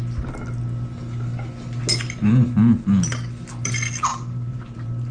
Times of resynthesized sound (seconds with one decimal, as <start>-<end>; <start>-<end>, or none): 4.1-5.1